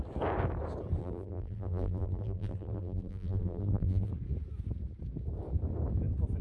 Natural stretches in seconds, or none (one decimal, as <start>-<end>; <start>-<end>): 0.0-1.0; 4.1-6.4